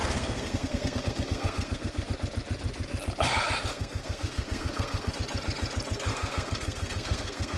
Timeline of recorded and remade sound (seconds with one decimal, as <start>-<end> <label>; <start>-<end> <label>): 0.0-2.1 remade; 2.1-3.7 recorded; 3.7-5.1 remade; 5.1-6.1 recorded; 6.1-7.6 remade